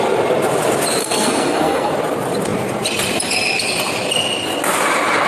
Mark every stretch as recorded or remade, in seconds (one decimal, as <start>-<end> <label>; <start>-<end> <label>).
0.0-1.0 recorded; 1.0-1.9 remade; 1.9-5.3 recorded